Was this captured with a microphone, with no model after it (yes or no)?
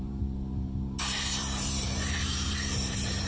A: no